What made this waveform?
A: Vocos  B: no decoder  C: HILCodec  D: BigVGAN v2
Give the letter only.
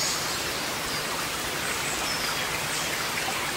B